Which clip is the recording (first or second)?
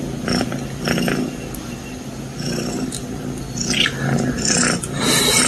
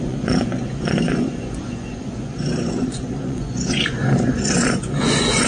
first